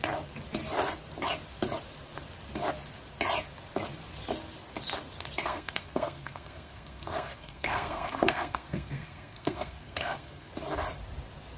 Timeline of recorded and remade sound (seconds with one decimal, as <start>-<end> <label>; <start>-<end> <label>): 0.0-5.4 recorded; 5.4-10.5 remade; 10.5-11.6 recorded